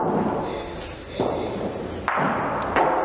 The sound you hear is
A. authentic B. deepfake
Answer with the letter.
A